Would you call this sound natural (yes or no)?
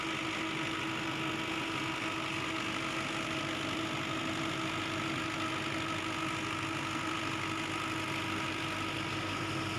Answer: yes